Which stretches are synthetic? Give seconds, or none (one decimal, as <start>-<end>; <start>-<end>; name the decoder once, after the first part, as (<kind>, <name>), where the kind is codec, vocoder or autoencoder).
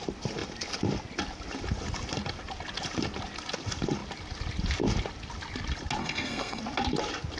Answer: 6.0-6.6 (codec, SNAC)